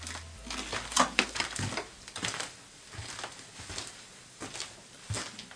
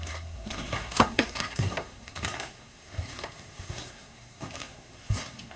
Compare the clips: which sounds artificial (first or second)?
second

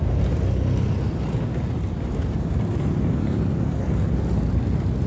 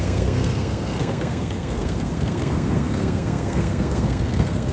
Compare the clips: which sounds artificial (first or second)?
second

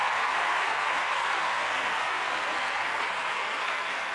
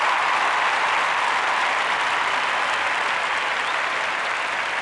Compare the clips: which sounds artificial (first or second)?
first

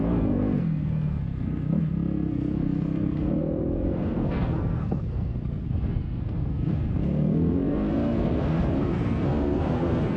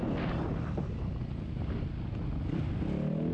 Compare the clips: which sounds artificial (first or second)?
first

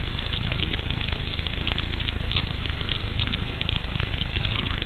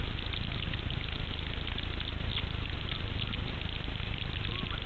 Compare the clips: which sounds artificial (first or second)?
first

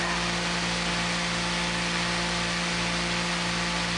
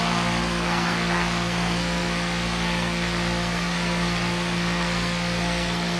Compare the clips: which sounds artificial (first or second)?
second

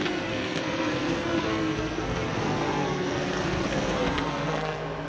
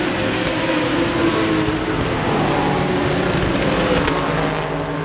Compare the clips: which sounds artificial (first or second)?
first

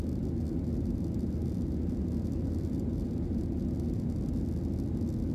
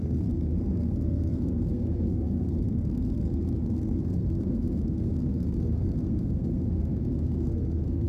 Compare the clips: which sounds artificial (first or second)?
second